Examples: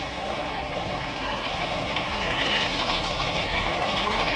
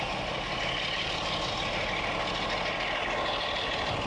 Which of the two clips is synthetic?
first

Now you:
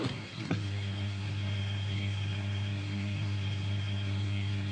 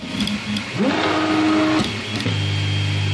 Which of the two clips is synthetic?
first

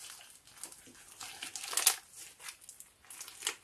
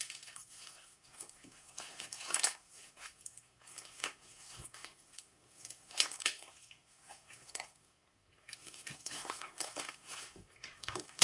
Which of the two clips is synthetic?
second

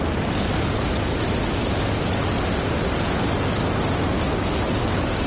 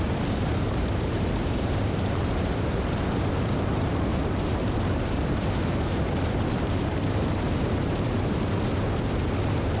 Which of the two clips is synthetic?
second